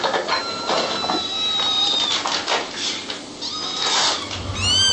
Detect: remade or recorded recorded